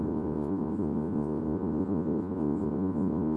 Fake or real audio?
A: fake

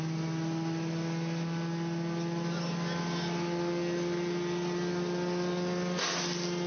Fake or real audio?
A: real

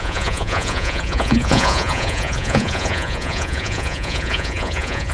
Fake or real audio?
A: fake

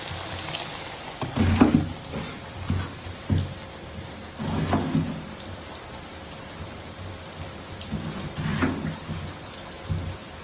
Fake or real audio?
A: real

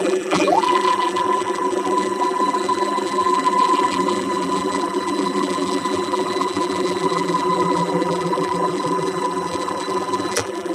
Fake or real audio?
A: fake